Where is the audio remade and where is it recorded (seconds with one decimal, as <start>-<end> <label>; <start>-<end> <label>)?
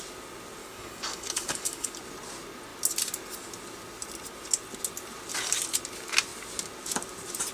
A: 0.0-0.6 recorded; 0.6-1.9 remade; 1.9-7.5 recorded